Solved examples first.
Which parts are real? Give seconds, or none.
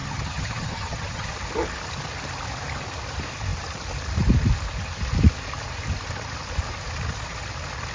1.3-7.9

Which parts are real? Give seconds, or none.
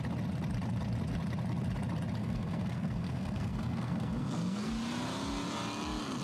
0.0-2.2; 4.7-6.2